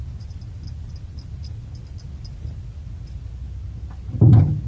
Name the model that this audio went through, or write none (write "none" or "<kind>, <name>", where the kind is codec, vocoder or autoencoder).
none